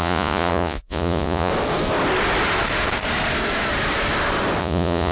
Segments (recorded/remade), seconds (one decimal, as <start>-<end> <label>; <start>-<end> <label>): 0.0-1.5 remade; 1.5-4.6 recorded; 4.6-5.1 remade